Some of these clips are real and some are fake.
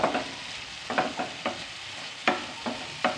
real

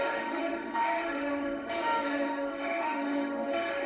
fake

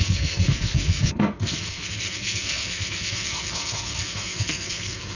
fake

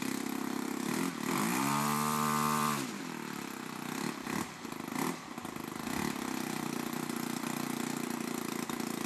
fake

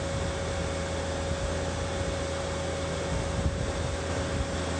real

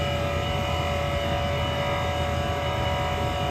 real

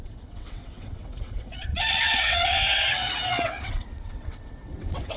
fake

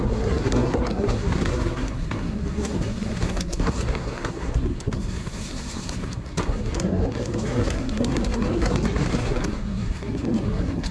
fake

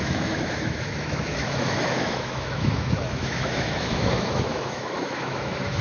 fake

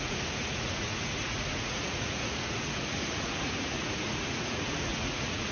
fake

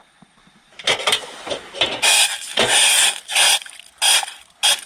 real